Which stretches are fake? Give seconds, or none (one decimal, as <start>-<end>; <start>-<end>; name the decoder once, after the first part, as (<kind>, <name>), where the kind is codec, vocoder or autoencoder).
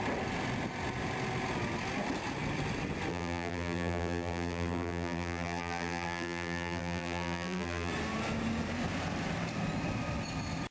3.1-7.9 (vocoder, BigVGAN v2)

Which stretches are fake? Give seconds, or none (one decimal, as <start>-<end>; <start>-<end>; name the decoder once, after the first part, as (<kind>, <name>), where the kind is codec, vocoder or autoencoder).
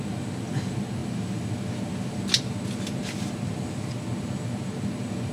none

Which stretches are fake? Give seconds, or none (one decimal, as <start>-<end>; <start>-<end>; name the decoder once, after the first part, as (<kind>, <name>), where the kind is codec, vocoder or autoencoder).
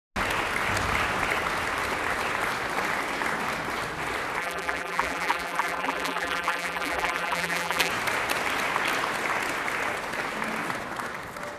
4.4-7.9 (vocoder, BigVGAN v2)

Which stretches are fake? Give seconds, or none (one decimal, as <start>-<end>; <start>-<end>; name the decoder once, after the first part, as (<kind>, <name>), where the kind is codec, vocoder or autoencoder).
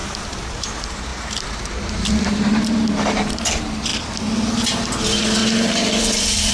0.0-3.9 (vocoder, BigVGAN v2); 5.0-5.4; 6.0-6.5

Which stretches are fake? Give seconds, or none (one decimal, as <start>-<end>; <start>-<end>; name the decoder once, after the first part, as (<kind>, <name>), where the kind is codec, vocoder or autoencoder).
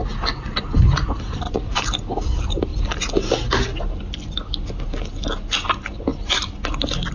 1.0-1.7 (vocoder, BigVGAN v2)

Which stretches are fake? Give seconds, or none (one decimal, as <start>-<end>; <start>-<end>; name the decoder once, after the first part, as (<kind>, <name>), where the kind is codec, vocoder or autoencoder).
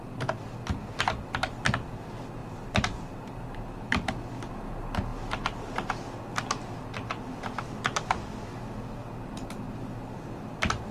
2.4-3.6 (vocoder, BigVGAN v2)